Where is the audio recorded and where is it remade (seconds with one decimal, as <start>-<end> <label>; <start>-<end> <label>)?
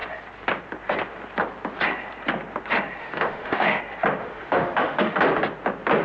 0.0-3.0 recorded; 3.0-3.8 remade; 3.8-4.2 recorded; 4.2-5.2 remade; 5.2-6.0 recorded